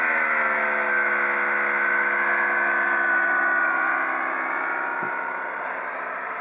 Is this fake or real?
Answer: real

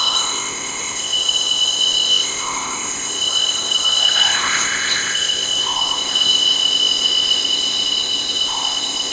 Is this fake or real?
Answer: fake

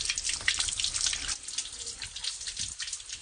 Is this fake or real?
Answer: real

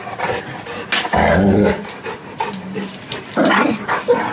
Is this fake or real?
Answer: real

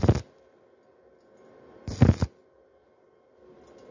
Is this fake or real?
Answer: real